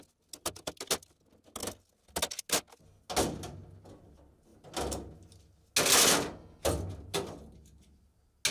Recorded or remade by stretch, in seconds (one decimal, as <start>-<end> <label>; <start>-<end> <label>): 0.0-8.5 recorded